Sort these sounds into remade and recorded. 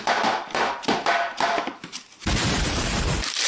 remade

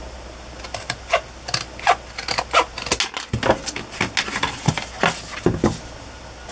recorded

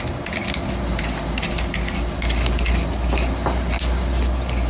recorded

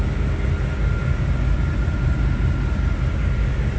recorded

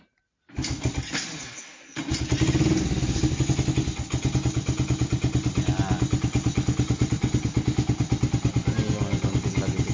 recorded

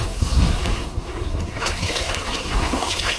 remade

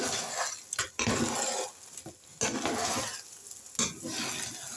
recorded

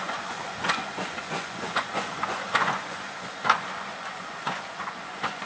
remade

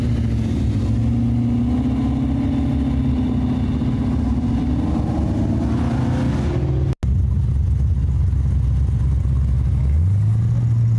recorded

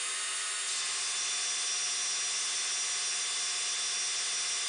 recorded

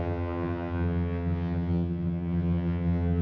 remade